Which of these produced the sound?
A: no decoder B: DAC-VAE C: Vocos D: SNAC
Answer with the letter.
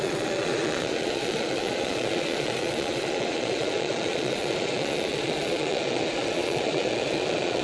C